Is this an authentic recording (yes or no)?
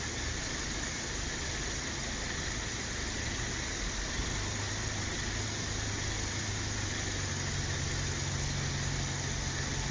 yes